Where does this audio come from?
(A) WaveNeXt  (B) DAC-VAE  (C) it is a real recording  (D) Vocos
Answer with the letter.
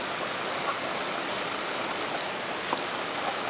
C